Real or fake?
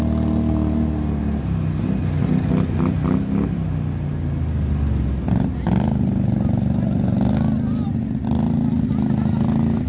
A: real